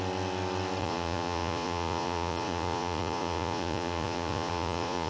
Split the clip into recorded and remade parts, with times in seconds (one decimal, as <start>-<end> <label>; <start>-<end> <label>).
0.0-0.8 recorded; 0.8-5.1 remade

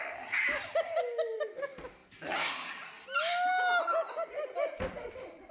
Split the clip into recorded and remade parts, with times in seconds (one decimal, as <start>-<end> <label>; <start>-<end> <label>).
0.0-5.5 recorded

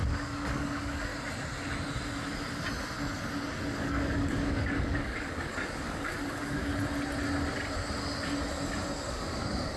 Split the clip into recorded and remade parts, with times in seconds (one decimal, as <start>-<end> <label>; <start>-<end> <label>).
0.0-1.1 remade; 1.1-3.8 recorded; 3.8-6.7 remade; 6.7-9.1 recorded; 9.1-9.8 remade